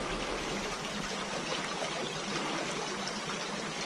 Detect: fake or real real